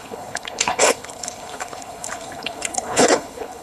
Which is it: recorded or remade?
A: remade